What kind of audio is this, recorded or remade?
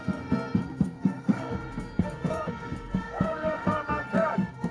remade